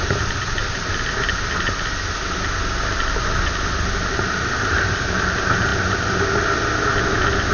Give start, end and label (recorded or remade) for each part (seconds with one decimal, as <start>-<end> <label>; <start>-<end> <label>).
0.0-7.5 recorded